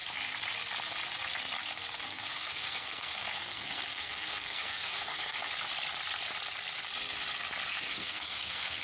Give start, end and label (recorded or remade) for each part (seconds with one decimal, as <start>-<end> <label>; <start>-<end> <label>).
0.0-2.0 recorded; 2.0-5.5 remade; 5.5-7.7 recorded; 7.7-8.8 remade